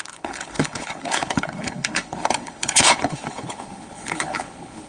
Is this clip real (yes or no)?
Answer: no